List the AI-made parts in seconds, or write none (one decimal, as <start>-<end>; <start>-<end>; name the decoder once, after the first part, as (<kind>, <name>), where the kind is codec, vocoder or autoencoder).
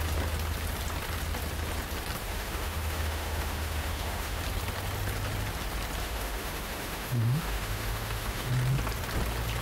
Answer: 2.2-4.4 (autoencoder, DAC-VAE); 6.0-8.5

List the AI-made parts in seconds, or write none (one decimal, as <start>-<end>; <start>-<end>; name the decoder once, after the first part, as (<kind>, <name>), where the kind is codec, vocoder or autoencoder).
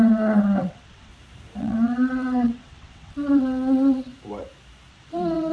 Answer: 0.0-1.1 (vocoder, WaveNeXt); 1.6-4.1; 4.9-5.5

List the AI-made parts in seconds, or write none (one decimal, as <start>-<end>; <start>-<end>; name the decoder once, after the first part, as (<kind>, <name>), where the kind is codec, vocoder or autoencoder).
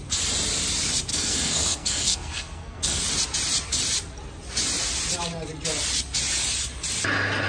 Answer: 1.1-3.0 (codec, SNAC)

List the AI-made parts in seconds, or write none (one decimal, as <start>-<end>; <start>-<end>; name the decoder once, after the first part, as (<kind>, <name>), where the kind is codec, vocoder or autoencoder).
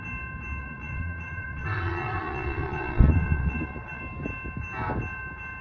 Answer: 0.6-4.0 (vocoder, Vocos)